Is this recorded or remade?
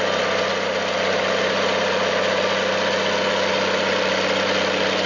recorded